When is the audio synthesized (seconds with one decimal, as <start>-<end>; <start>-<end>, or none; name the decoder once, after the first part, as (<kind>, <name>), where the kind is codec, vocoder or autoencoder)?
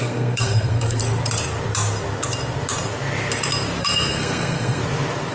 0.0-1.0 (codec, SNAC); 3.8-4.8